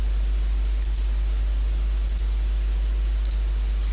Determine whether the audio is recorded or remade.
recorded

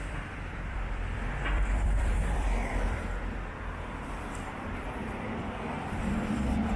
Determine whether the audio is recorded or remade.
remade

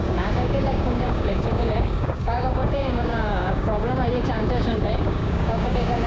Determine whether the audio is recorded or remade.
remade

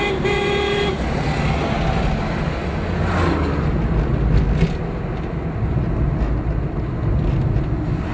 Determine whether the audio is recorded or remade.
recorded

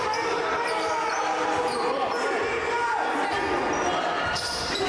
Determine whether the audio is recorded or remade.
recorded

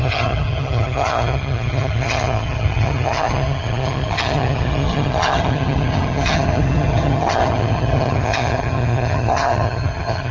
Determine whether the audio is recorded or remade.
remade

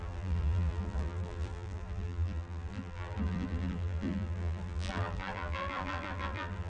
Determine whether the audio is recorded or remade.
remade